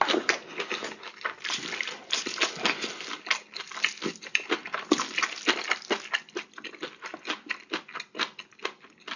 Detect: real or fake real